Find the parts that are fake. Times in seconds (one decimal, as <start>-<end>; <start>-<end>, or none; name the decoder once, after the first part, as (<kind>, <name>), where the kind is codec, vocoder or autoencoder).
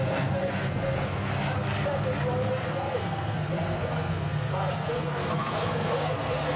0.0-1.3 (codec, SNAC); 2.5-6.6